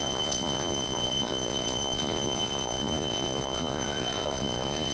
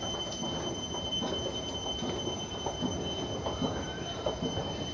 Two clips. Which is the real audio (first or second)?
second